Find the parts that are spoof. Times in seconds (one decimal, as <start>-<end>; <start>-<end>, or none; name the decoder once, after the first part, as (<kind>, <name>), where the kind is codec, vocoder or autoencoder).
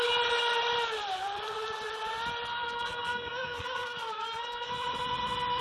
2.5-4.7 (codec, SNAC)